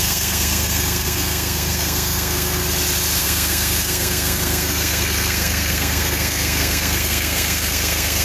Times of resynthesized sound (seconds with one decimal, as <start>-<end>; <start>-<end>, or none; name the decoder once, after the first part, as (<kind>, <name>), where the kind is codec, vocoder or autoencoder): 0.0-2.6 (codec, SNAC); 3.2-8.2